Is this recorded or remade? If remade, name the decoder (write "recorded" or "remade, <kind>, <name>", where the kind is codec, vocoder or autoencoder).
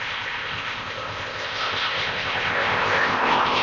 remade, codec, ZipCodec